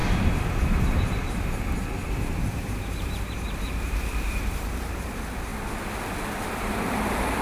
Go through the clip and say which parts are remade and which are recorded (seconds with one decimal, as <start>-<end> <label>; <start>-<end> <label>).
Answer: 0.0-5.5 remade; 5.5-6.5 recorded; 6.5-7.4 remade